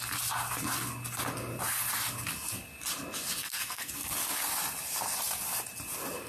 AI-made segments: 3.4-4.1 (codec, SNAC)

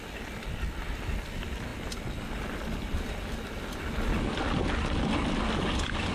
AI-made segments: none

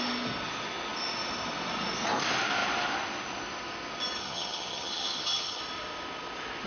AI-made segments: 4.2-5.6 (vocoder, HiFi-GAN)

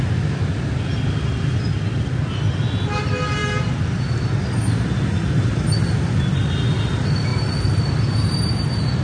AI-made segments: none

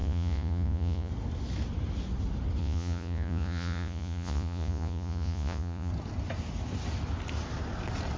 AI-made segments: 0.0-1.1 (vocoder, Vocos); 2.6-5.9

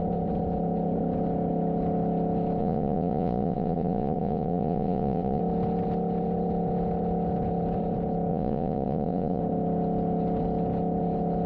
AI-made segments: 2.6-5.4 (vocoder, Vocos); 8.3-9.4

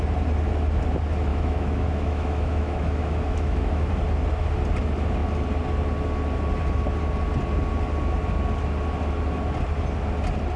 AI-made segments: 1.3-3.9 (autoencoder, DAC-VAE)

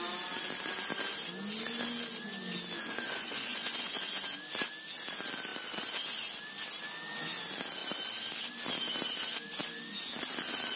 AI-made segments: 2.8-4.1 (vocoder, Vocos)